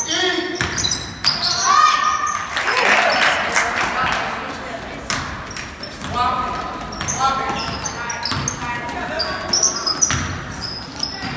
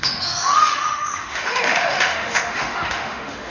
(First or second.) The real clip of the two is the first